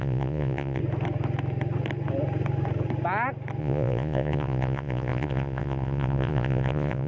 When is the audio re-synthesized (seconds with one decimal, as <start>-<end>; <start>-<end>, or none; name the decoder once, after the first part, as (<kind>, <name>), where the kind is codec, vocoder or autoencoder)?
0.0-0.8 (vocoder, Vocos); 3.6-7.1

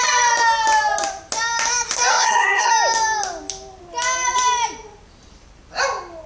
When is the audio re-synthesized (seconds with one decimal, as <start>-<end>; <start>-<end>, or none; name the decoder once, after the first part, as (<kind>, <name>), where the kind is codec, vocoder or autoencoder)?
2.1-2.7 (codec, SNAC)

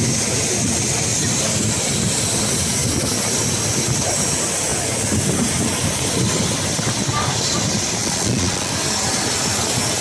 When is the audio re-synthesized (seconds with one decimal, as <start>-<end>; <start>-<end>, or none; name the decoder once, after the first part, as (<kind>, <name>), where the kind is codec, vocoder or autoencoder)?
8.0-8.7 (vocoder, Vocos)

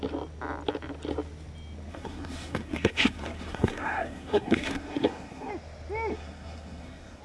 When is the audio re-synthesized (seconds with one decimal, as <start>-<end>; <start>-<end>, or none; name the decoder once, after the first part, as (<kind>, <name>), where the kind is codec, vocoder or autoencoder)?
1.9-5.5 (codec, SNAC); 6.1-7.2

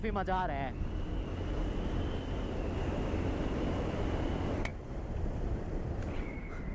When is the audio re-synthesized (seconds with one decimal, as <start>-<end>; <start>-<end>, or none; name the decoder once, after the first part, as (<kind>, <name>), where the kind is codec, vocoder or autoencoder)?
2.8-6.7 (vocoder, BigVGAN v2)